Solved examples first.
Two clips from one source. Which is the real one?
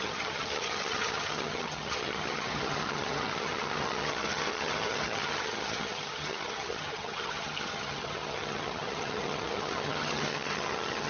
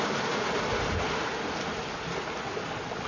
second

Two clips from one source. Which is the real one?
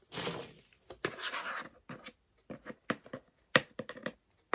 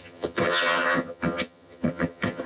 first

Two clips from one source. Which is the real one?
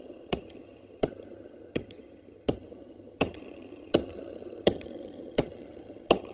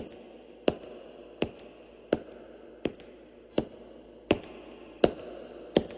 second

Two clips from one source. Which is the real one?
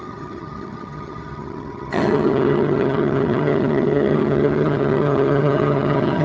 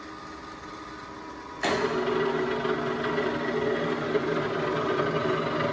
second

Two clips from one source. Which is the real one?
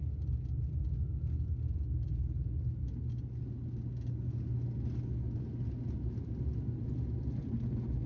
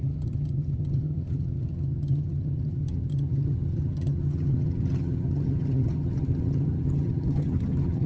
first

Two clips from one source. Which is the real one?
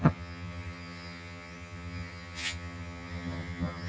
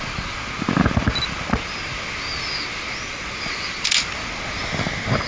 second